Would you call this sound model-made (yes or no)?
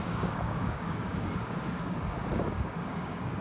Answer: yes